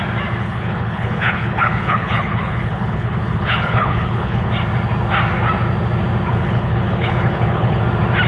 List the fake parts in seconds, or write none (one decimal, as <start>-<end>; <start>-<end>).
0.4-4.5; 6.3-7.8